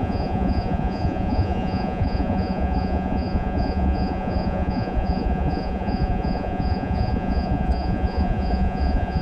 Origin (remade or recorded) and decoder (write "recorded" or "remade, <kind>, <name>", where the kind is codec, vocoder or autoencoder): remade, vocoder, Vocos